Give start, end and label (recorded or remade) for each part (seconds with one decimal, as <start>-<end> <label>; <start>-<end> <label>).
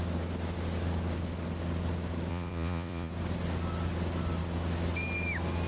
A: 0.0-2.3 recorded; 2.3-3.1 remade; 3.1-5.7 recorded